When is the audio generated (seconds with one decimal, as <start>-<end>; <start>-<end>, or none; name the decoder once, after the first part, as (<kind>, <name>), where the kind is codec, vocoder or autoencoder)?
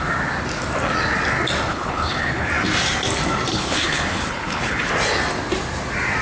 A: 1.7-2.5 (codec, HILCodec); 3.5-4.9